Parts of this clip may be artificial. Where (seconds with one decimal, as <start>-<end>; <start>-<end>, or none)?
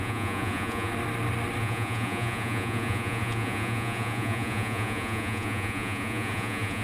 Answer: 0.0-0.9; 1.6-6.8